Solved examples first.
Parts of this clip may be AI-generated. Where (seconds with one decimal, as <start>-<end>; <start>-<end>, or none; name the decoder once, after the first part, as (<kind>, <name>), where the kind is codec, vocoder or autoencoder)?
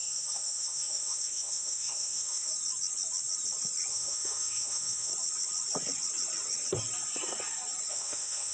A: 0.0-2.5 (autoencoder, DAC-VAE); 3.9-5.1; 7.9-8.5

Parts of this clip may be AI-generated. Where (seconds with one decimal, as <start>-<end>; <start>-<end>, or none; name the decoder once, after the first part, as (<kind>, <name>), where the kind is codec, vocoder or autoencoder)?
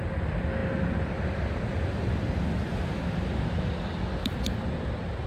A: none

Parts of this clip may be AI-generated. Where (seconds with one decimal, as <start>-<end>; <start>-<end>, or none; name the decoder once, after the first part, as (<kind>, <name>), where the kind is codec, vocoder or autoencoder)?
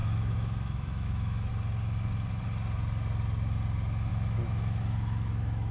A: 0.0-1.5 (autoencoder, DAC-VAE); 4.1-5.7